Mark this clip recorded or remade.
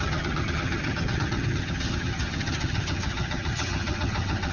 remade